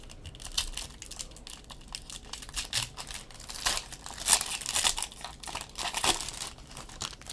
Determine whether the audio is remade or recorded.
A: recorded